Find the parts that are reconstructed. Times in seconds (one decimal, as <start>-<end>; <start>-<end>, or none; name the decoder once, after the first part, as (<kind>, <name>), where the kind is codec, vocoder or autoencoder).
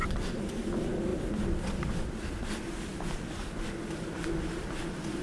none